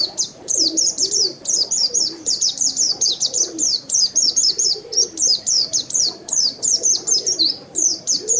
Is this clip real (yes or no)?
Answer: no